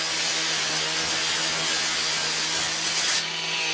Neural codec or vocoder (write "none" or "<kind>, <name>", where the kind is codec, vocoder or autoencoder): none